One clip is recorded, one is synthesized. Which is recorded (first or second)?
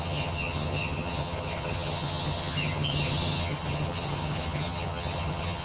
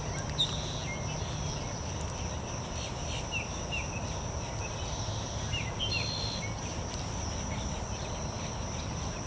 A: second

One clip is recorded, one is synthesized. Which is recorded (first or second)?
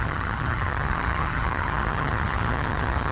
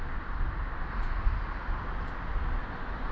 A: second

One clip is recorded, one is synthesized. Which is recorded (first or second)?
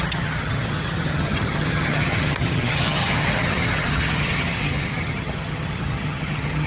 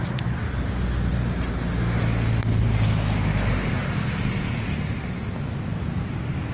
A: second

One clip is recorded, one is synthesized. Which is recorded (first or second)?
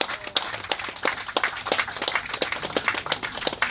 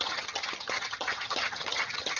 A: first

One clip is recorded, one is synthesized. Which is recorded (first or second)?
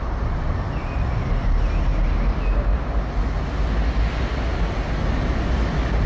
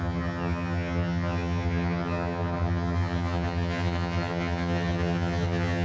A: first